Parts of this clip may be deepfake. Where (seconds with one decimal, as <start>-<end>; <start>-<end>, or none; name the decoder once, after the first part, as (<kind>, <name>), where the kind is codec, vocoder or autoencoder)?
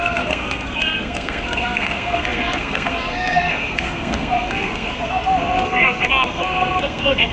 0.0-7.3 (codec, SNAC)